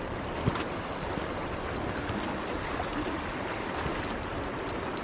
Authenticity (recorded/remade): recorded